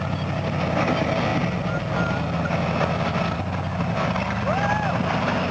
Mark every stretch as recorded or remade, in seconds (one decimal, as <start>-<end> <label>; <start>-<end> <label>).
0.0-5.5 recorded